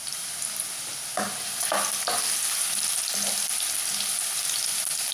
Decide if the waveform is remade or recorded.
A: recorded